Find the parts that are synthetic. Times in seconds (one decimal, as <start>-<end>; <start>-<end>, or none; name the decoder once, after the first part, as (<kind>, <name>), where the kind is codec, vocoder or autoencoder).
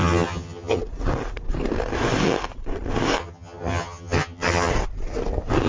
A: 0.0-0.8 (vocoder, HiFi-GAN); 3.2-4.7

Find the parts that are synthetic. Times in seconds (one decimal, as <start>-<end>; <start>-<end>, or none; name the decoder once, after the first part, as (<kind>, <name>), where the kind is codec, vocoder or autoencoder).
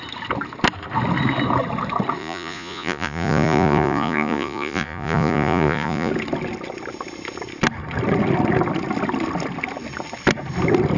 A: 2.2-6.1 (vocoder, Vocos)